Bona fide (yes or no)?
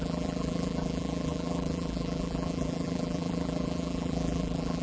no